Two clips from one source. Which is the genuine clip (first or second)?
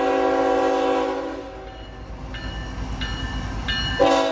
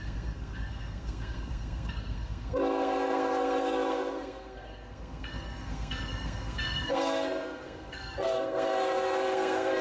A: first